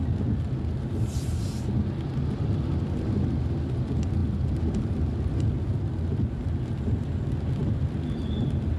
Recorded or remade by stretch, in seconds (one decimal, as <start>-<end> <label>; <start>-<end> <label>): 0.0-8.8 recorded